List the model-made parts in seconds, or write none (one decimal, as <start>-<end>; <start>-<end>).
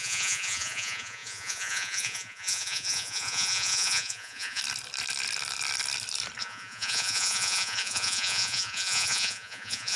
0.0-4.6; 6.4-10.0